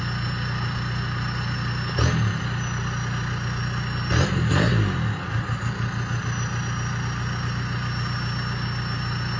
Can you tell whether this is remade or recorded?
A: recorded